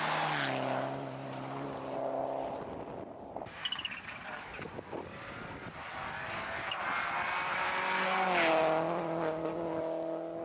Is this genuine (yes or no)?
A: yes